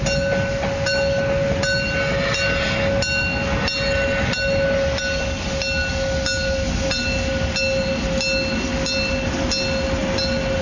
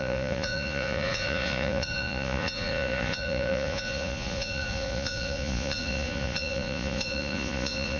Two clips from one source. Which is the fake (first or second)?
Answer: second